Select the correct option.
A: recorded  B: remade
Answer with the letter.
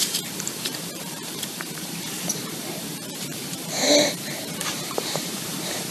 B